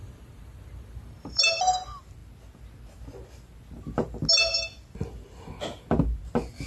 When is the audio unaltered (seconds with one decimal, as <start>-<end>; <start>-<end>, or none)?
1.4-6.7